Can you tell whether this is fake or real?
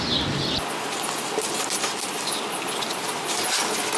real